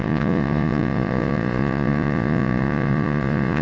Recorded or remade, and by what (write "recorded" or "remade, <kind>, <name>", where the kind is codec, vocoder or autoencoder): remade, vocoder, Vocos